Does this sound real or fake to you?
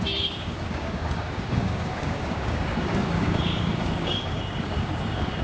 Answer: fake